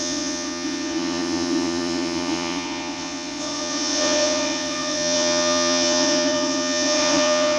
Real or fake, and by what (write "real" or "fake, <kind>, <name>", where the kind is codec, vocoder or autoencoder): fake, vocoder, Vocos